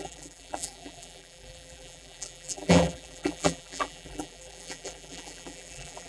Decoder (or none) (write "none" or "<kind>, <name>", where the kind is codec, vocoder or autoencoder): vocoder, BigVGAN v2